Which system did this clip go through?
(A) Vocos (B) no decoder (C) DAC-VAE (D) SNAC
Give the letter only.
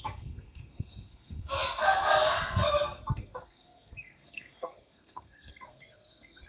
D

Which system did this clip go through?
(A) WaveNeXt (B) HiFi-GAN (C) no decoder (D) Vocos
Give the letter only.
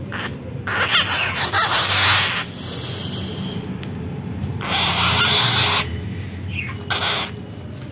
C